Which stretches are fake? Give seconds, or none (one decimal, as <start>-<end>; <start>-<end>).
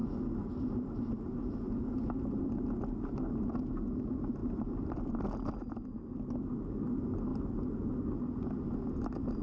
4.4-5.1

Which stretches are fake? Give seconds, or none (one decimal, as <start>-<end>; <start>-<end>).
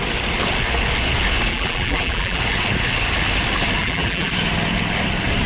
1.5-2.4; 3.8-4.3